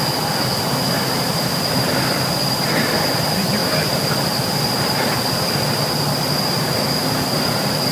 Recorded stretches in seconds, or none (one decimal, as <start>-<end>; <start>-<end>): 0.0-7.9